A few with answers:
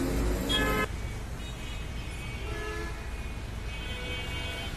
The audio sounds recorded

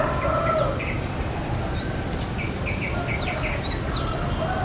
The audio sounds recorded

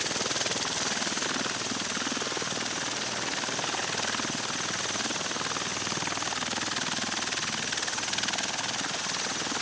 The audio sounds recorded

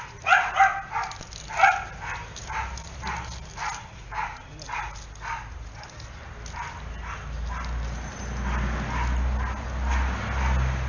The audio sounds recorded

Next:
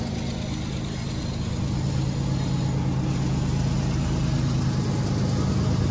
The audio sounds recorded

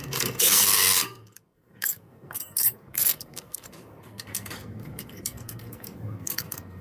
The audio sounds remade